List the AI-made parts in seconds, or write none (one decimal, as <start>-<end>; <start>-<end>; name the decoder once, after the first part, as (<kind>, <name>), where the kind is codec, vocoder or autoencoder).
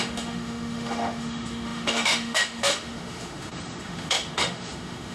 0.0-5.1 (autoencoder, DAC-VAE)